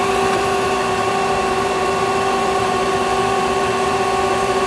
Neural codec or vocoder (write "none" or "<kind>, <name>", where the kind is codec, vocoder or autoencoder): vocoder, BigVGAN v2